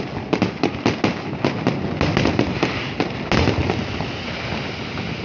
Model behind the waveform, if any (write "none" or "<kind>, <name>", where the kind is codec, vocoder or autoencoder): none